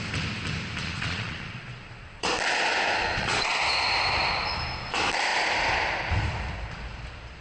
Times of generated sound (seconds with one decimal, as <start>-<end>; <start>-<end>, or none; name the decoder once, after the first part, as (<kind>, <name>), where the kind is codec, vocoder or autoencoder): 0.8-2.3 (vocoder, Vocos); 3.0-3.6